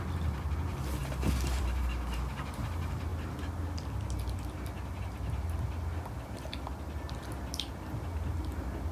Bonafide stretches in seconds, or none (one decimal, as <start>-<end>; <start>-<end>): 0.0-8.9